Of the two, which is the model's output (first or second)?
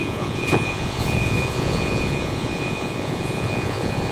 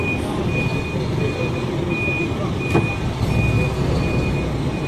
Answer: first